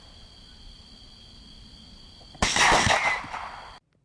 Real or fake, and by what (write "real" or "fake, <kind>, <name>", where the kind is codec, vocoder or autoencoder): real